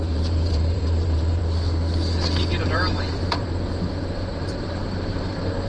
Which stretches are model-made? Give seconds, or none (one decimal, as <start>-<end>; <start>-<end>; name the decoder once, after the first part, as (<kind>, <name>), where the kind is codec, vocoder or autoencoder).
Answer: 0.0-1.4 (vocoder, BigVGAN v2); 2.6-5.7